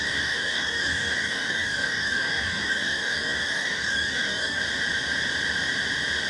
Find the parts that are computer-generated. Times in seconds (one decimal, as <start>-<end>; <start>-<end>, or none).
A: 0.0-4.6